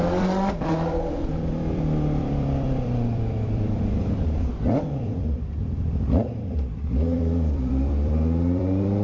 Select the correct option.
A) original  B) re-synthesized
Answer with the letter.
B